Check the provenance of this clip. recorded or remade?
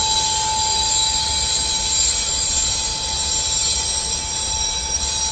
recorded